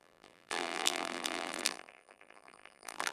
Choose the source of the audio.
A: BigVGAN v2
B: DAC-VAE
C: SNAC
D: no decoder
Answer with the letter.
A